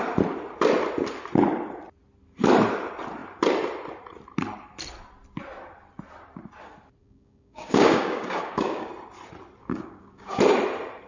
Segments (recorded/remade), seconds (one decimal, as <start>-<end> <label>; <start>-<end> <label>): 0.0-7.0 recorded; 7.0-8.9 remade; 8.9-9.6 recorded; 9.6-10.4 remade; 10.4-11.1 recorded